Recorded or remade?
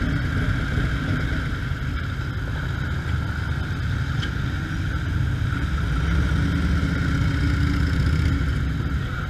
recorded